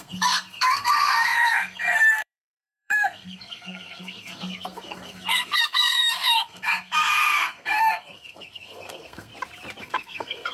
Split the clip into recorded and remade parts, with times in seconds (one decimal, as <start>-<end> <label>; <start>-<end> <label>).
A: 0.0-9.3 remade; 9.3-9.8 recorded; 9.8-10.5 remade